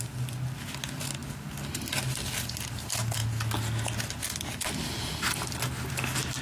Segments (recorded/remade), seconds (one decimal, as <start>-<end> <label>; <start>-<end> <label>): 0.0-6.4 recorded